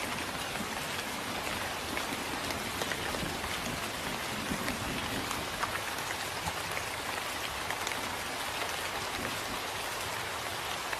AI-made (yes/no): no